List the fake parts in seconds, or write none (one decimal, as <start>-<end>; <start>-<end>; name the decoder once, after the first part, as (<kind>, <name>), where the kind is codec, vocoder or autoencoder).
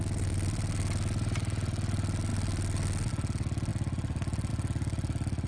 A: none